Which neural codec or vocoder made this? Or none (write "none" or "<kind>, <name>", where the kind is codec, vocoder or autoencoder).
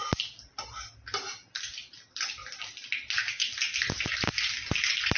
none